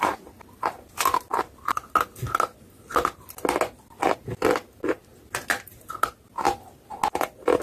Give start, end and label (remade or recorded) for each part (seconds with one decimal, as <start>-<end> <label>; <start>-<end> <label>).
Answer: 0.0-7.6 recorded